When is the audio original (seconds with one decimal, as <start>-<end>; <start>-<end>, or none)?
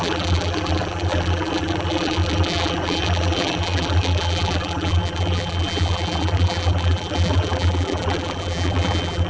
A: none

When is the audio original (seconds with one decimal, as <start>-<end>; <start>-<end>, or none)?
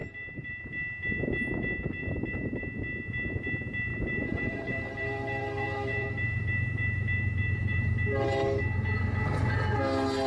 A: 0.6-2.0; 2.6-3.9; 8.6-10.3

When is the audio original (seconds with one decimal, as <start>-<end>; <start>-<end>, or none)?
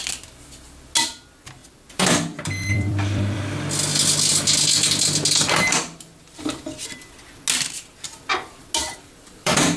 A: 0.0-1.6; 3.4-8.8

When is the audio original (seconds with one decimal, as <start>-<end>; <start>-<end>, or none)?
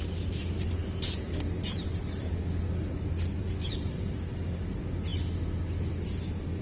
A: 0.0-3.4; 4.4-6.6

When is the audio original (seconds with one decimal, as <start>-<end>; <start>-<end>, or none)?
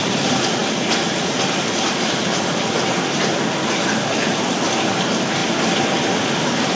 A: 0.6-4.3; 5.4-6.8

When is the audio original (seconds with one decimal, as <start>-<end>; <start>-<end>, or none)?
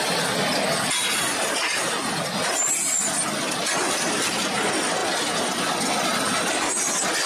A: 0.0-7.3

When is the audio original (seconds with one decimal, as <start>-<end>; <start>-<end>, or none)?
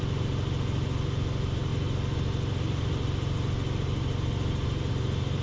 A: 0.0-5.4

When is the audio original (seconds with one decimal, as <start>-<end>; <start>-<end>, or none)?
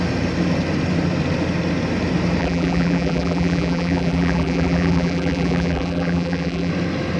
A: 0.0-2.4; 6.7-7.2